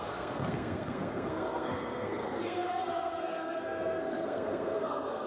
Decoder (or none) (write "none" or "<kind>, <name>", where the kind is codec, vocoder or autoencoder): codec, SNAC